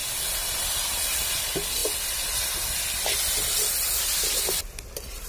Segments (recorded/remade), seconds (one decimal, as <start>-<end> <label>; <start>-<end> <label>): 0.0-5.3 recorded